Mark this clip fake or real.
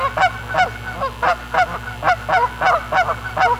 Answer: real